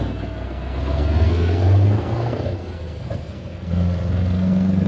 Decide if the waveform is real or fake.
fake